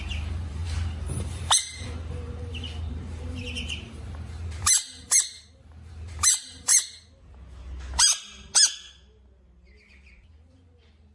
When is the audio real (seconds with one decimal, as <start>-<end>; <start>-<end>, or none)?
6.7-9.9